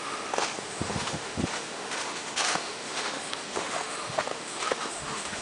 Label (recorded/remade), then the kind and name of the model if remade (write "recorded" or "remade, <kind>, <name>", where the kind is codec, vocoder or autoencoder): remade, autoencoder, DAC-VAE